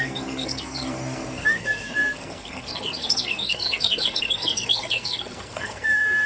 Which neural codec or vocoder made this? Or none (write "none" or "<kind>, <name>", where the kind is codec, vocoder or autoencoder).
codec, SNAC